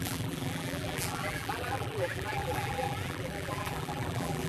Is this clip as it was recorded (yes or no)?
no